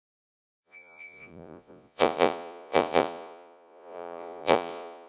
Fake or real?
fake